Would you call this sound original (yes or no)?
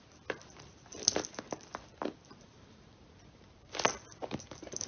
no